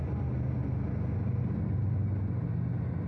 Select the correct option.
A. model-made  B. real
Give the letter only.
B